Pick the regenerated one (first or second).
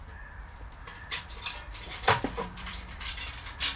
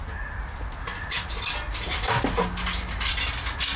first